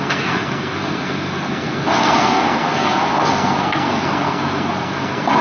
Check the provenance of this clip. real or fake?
fake